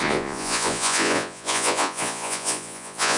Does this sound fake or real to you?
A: fake